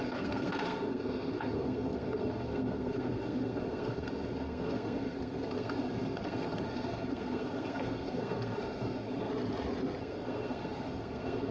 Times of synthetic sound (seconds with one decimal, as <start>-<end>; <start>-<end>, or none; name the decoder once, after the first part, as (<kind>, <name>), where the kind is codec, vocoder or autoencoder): 0.0-9.3 (codec, SNAC); 10.0-11.5